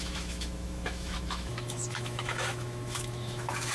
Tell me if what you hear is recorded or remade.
remade